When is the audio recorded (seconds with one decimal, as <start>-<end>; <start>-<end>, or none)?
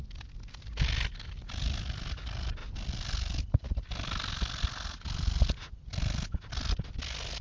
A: 0.0-7.4